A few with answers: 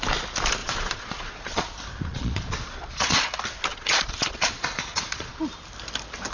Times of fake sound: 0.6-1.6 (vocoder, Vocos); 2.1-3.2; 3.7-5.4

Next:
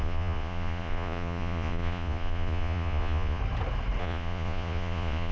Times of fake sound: 0.0-3.4 (vocoder, Vocos); 4.0-5.3